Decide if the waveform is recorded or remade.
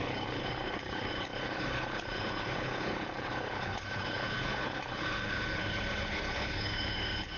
remade